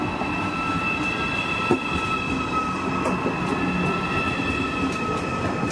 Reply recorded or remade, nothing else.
recorded